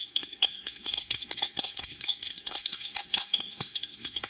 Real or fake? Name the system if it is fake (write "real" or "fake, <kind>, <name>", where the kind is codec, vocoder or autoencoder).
fake, codec, SNAC